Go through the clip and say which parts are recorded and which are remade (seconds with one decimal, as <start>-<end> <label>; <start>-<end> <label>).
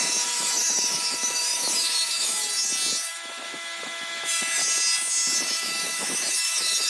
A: 0.0-2.4 remade; 2.4-3.1 recorded; 3.1-4.6 remade; 4.6-5.4 recorded; 5.4-6.9 remade